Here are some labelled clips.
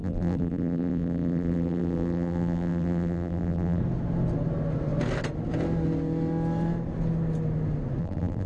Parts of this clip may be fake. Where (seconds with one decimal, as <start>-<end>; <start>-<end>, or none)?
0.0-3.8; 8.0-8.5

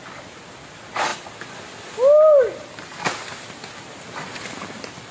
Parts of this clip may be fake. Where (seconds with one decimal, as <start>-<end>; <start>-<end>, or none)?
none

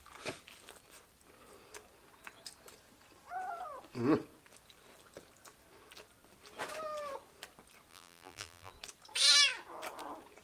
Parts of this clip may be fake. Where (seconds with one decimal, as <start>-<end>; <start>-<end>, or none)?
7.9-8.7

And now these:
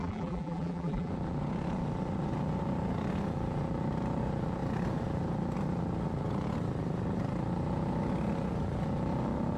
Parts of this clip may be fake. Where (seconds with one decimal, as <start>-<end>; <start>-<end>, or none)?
0.0-1.1

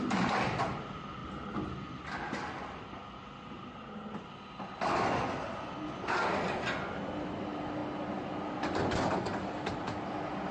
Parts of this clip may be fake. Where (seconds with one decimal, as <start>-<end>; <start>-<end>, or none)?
0.0-1.2; 6.0-7.8

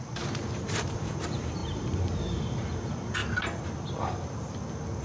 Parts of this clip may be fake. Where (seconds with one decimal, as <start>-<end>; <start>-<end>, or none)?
0.0-3.2

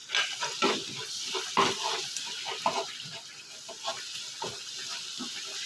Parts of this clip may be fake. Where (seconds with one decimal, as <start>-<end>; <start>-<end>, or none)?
0.0-3.4; 3.9-4.8